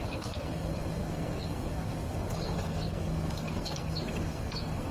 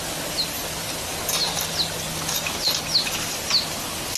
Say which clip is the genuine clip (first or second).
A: second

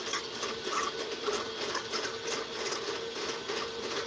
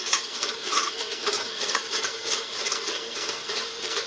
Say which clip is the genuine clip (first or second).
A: first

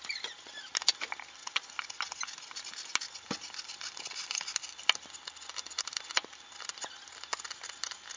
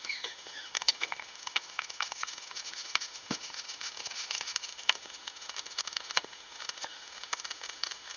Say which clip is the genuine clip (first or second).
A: first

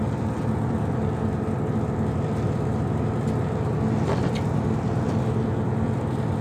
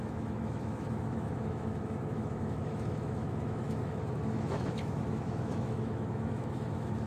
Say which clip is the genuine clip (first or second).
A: first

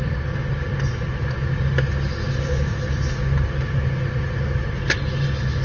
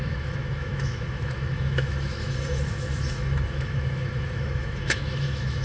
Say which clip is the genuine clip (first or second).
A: first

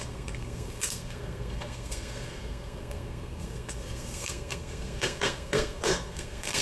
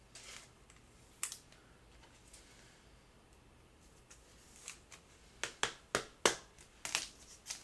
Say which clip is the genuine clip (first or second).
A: second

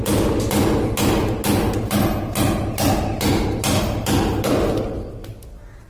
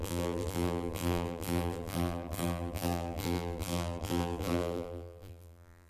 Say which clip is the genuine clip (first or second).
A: first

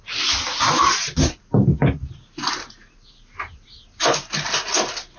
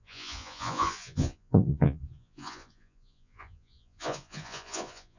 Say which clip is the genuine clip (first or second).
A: first